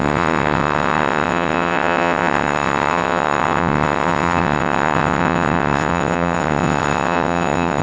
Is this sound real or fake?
fake